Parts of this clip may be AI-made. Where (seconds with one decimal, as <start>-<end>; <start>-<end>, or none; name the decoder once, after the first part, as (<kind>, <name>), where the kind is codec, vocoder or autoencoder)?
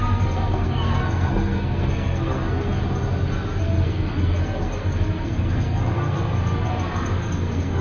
0.0-2.8 (codec, SNAC); 3.6-6.4; 7.2-7.8